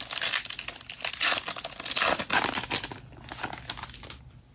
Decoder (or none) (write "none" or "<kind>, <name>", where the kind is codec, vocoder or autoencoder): none